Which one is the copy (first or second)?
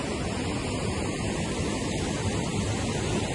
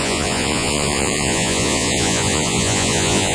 second